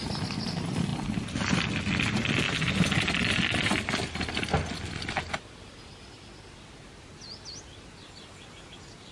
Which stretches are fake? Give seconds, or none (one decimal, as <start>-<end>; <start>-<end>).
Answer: none